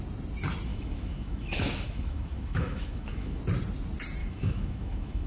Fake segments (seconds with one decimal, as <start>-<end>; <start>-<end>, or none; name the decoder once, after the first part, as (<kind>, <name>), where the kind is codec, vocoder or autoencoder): 0.7-3.4 (autoencoder, DAC-VAE); 4.2-5.3